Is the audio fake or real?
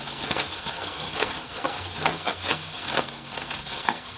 fake